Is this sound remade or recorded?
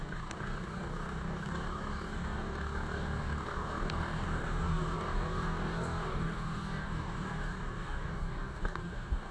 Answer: remade